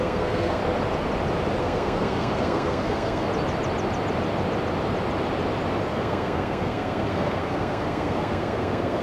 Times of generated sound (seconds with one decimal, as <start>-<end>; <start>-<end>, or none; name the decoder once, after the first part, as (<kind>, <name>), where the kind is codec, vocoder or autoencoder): 0.0-0.6 (codec, SNAC); 1.6-3.3; 5.9-9.0